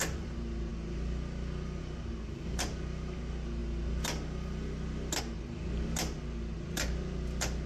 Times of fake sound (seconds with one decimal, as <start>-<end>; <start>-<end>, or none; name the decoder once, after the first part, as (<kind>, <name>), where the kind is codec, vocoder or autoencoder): none